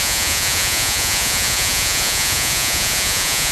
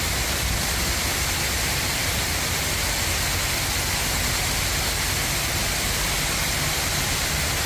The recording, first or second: second